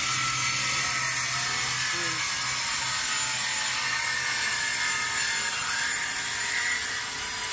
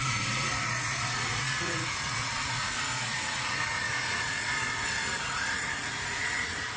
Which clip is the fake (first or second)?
second